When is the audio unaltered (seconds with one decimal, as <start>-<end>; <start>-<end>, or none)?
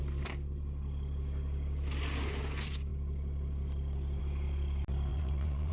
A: 0.0-5.1